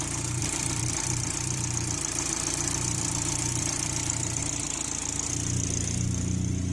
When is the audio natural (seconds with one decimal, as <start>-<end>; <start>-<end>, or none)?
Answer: 0.0-0.4; 4.4-6.7